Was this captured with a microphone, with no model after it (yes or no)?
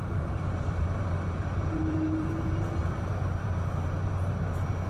no